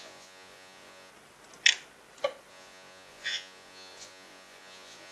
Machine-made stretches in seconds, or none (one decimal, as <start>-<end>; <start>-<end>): 0.0-1.1; 2.5-5.1